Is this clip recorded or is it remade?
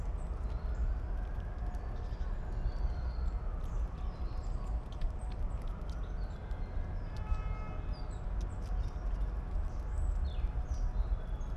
recorded